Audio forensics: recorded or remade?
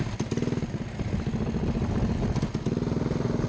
recorded